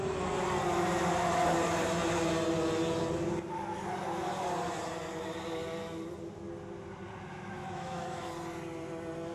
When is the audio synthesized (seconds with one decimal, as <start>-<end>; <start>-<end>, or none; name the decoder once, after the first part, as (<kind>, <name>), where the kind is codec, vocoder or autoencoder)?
7.3-8.3 (autoencoder, DAC-VAE)